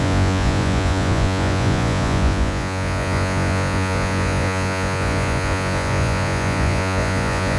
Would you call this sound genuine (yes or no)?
no